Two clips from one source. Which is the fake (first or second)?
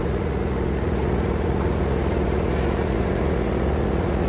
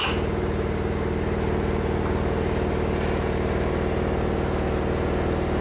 first